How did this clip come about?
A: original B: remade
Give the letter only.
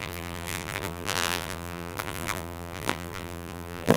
B